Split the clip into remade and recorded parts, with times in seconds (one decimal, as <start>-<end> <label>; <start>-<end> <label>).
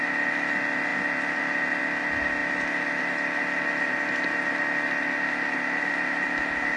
0.0-6.8 recorded